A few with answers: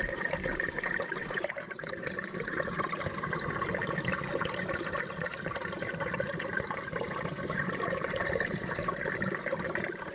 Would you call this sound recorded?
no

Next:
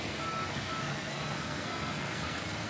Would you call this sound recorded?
no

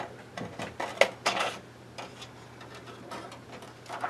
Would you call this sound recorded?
yes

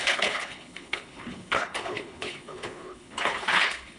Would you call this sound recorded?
no